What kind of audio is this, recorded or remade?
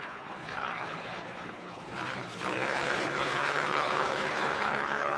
remade